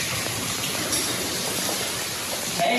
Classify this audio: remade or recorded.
recorded